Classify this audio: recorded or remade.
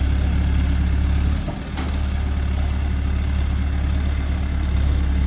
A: recorded